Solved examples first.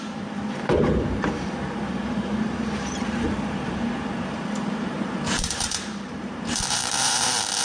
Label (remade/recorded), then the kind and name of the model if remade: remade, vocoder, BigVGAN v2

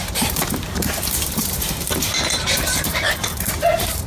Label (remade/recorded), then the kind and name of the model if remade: remade, vocoder, BigVGAN v2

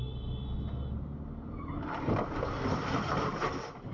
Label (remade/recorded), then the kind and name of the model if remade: recorded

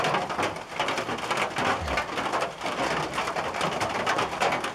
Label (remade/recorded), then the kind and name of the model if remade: recorded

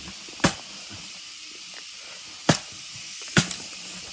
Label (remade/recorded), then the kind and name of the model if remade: remade, vocoder, BigVGAN v2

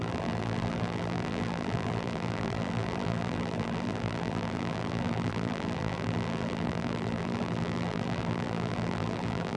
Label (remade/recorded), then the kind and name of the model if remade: remade, vocoder, BigVGAN v2